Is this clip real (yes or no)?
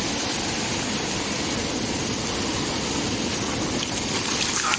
yes